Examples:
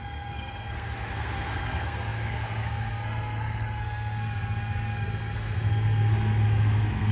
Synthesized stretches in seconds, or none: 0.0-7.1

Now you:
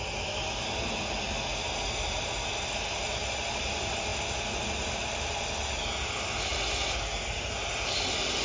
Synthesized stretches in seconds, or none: 2.5-3.6